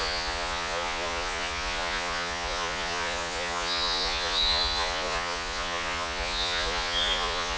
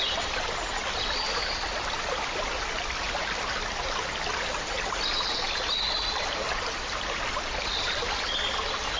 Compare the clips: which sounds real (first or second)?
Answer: second